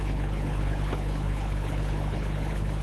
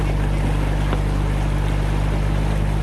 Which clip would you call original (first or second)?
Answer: second